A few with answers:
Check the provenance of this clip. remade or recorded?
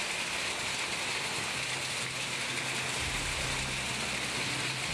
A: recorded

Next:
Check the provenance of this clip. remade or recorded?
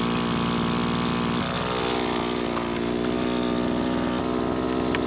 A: recorded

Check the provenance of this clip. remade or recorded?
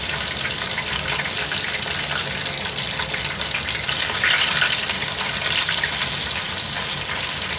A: recorded